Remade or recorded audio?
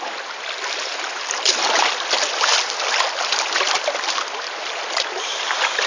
recorded